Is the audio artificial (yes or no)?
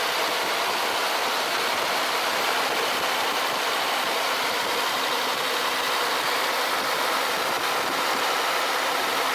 yes